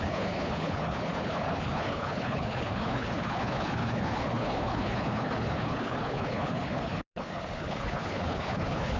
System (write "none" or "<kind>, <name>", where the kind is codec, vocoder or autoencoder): codec, HILCodec